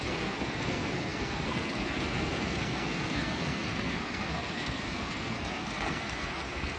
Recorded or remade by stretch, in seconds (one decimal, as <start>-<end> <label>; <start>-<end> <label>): 0.0-6.8 remade